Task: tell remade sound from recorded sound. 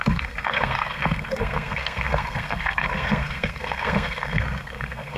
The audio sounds remade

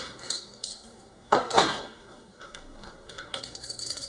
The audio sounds remade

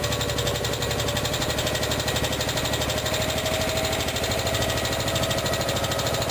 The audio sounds recorded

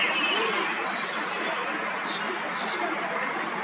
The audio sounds recorded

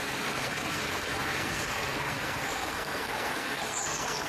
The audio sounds remade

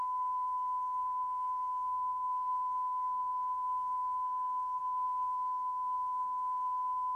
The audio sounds remade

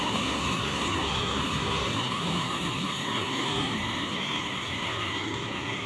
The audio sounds remade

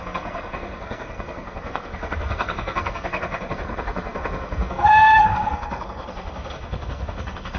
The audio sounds remade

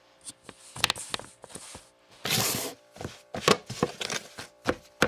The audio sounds recorded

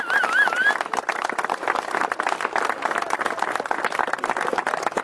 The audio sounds recorded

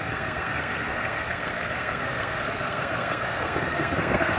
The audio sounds remade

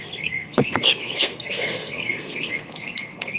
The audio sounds remade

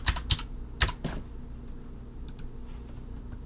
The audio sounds recorded